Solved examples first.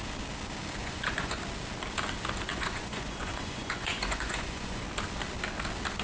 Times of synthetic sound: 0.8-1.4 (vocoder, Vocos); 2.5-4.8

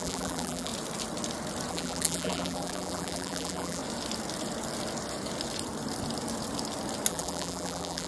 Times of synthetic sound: 0.0-0.7 (vocoder, BigVGAN v2); 1.7-3.8; 7.1-8.1